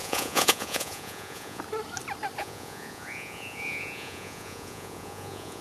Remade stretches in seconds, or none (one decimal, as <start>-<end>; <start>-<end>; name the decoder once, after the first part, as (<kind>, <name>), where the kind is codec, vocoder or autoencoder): 0.0-1.6 (vocoder, Vocos); 2.4-5.6